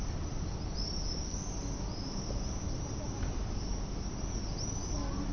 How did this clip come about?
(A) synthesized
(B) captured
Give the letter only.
B